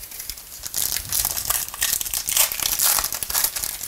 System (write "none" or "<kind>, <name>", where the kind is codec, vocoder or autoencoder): none